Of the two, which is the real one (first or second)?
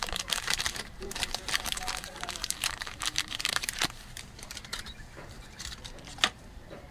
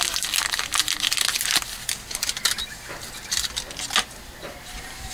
second